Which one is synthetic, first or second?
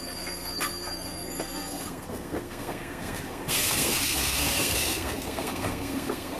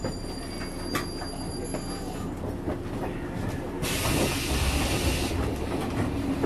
first